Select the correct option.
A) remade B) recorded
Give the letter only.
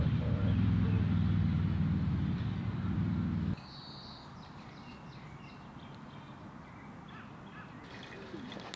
B